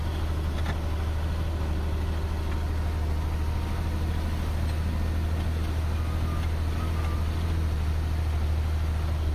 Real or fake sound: real